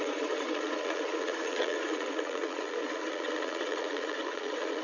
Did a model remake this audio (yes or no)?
yes